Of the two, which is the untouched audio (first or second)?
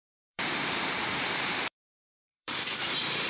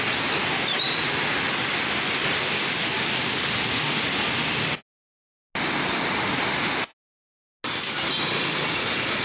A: second